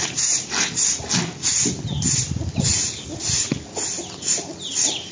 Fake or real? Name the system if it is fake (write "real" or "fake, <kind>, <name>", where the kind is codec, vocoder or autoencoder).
real